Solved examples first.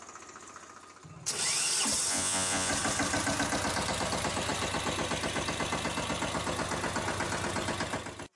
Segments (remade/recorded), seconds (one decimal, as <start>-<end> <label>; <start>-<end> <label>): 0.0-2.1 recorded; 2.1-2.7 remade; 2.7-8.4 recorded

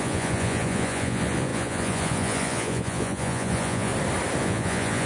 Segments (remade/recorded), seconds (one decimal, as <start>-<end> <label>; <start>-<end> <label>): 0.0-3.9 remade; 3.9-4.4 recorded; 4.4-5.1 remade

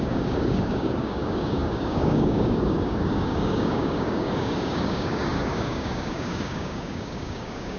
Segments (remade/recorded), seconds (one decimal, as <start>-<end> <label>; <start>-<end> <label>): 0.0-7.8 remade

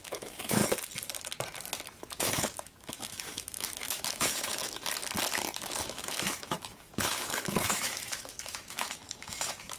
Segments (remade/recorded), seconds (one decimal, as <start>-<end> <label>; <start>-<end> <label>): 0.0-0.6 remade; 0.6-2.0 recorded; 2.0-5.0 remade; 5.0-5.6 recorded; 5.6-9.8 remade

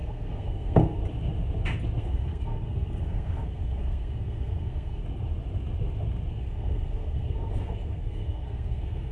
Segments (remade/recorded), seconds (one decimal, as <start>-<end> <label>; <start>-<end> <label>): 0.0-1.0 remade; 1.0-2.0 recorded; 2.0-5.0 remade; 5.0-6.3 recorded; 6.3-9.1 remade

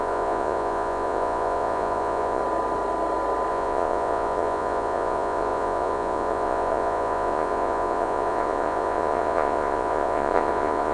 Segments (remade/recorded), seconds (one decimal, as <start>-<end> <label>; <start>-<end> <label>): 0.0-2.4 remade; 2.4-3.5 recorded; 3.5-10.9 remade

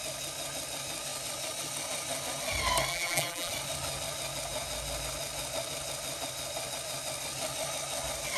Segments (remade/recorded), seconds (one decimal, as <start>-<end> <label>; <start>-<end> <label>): 0.0-2.9 recorded; 2.9-3.5 remade; 3.5-8.4 recorded